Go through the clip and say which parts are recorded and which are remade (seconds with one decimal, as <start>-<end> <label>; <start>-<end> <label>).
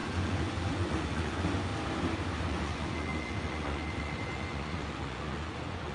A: 0.0-1.7 remade; 1.7-2.4 recorded; 2.4-5.9 remade